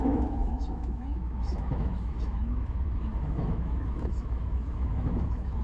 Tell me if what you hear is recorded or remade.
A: remade